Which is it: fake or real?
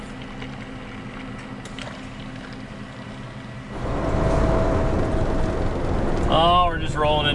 real